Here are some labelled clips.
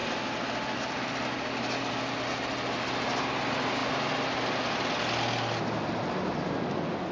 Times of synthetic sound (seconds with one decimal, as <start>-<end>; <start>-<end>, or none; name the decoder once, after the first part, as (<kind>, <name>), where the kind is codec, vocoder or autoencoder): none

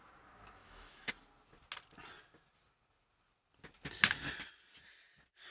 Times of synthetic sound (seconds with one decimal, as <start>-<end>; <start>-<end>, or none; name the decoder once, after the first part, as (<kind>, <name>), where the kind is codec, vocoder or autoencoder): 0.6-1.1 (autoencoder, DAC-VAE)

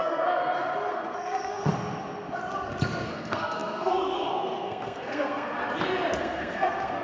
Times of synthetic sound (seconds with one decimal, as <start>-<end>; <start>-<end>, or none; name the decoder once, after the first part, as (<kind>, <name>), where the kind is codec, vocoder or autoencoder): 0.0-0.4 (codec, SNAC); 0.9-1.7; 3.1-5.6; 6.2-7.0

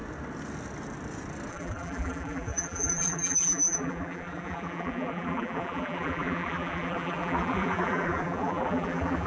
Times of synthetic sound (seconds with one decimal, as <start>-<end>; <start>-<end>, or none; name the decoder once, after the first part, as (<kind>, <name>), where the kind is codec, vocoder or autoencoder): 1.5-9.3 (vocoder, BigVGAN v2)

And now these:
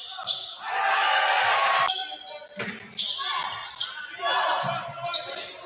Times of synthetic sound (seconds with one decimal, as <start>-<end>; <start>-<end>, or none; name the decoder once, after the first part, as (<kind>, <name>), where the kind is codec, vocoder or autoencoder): none

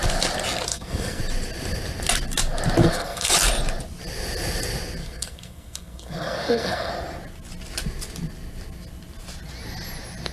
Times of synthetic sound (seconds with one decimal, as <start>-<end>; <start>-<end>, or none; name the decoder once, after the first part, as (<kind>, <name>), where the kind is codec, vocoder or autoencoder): 0.7-1.2 (codec, SNAC); 2.8-3.3; 5.0-6.9

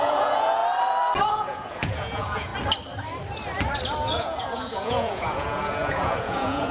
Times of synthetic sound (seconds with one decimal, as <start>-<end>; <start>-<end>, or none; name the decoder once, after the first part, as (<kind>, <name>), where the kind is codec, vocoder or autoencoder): 0.0-0.6 (vocoder, Vocos); 1.3-2.5; 4.1-6.7